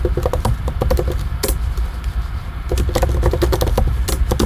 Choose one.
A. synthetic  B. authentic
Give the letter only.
B